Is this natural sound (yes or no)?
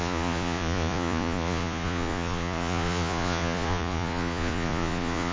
no